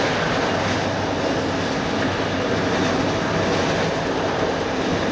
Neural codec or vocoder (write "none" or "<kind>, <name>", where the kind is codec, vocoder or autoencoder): none